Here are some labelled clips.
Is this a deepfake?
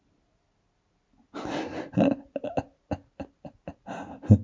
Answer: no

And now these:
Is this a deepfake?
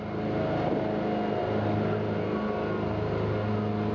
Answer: no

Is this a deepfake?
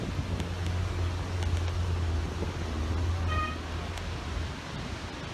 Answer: no